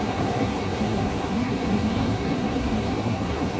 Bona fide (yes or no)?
no